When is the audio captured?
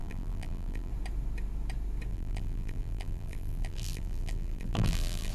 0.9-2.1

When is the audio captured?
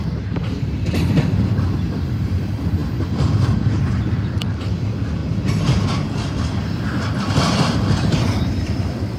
5.2-6.6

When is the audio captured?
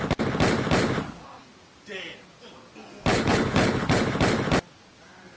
0.0-3.1; 4.0-5.4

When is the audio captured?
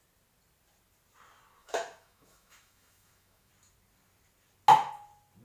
0.0-1.6; 3.5-5.4